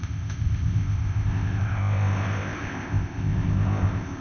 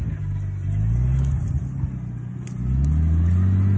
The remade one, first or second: first